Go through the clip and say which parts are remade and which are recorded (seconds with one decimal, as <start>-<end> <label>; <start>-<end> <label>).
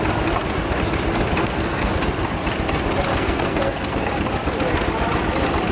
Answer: 0.0-1.4 recorded; 1.4-1.9 remade; 1.9-3.1 recorded; 3.1-4.1 remade; 4.1-5.7 recorded